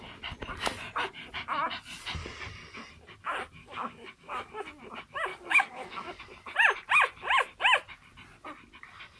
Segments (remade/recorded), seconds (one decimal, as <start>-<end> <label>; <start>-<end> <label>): 0.0-3.6 recorded; 3.6-4.5 remade; 4.5-5.3 recorded; 5.3-6.2 remade; 6.2-9.2 recorded